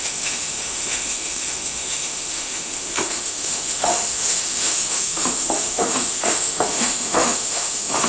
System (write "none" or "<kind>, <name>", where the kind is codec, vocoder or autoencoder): autoencoder, DAC-VAE